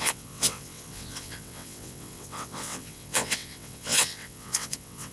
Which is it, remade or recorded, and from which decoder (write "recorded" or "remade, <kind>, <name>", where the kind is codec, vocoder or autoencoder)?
remade, vocoder, WaveNeXt